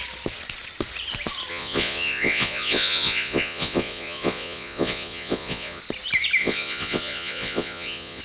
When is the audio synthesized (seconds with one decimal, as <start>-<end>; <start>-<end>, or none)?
1.5-5.8; 6.4-8.2